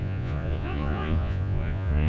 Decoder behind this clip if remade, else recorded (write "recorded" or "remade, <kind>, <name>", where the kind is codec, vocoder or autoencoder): remade, vocoder, Vocos